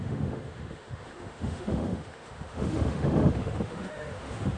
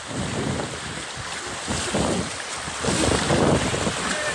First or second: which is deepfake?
first